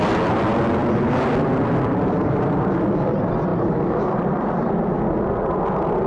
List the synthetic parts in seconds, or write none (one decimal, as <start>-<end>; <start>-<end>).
none